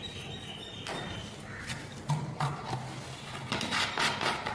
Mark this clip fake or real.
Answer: real